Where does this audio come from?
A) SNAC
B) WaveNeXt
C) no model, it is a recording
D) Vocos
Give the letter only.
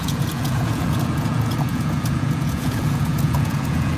D